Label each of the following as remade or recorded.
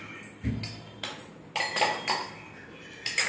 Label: recorded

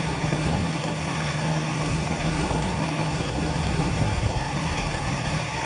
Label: remade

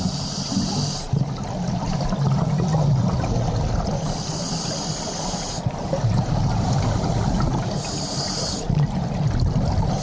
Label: recorded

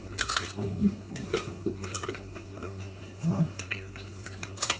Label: remade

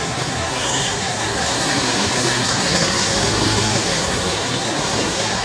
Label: remade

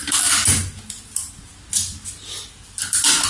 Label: recorded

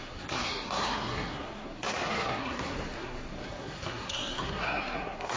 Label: remade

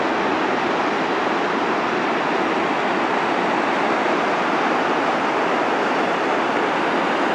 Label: recorded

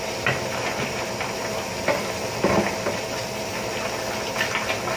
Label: recorded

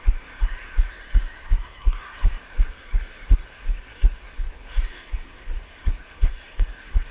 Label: remade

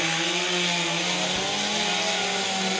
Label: recorded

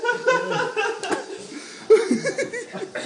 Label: recorded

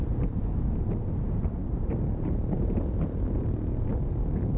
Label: recorded